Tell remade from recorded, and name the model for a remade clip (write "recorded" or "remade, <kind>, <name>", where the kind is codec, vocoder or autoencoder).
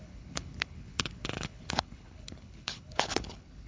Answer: remade, codec, HILCodec